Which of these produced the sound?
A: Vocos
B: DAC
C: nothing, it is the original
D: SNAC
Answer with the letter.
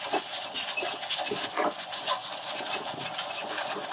A